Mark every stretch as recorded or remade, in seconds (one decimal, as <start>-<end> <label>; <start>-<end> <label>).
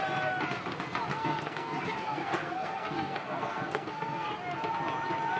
0.0-1.1 recorded; 1.1-4.3 remade; 4.3-5.4 recorded